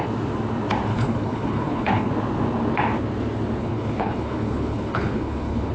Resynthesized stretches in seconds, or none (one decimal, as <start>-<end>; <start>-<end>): 0.9-2.1; 3.6-5.7